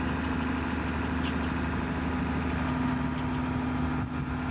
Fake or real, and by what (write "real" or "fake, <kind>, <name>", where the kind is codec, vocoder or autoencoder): real